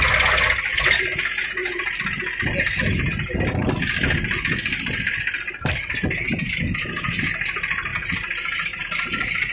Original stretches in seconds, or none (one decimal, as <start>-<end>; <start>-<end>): 0.0-7.9; 8.8-9.5